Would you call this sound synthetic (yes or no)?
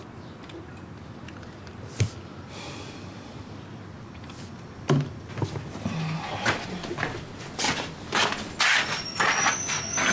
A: no